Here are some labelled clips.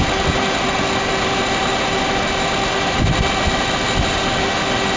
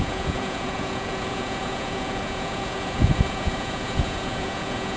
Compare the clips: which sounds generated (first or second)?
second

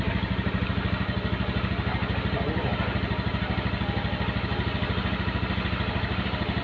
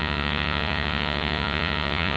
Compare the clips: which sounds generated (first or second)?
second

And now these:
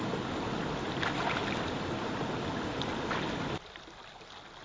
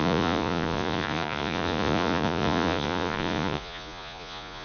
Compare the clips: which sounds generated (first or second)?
second